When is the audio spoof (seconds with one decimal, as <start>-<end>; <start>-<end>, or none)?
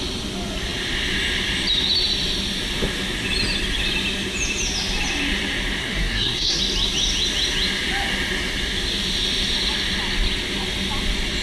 5.8-6.6